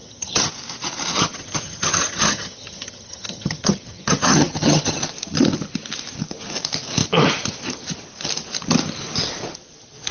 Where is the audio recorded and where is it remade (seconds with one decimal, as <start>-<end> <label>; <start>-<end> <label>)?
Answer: 0.0-0.5 remade; 0.5-1.1 recorded; 1.1-5.0 remade; 5.0-10.1 recorded